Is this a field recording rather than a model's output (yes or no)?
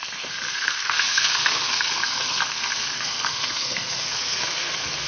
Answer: no